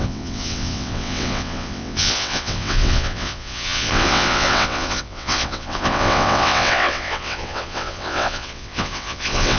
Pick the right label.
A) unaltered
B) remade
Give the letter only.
B